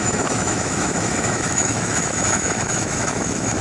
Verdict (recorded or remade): remade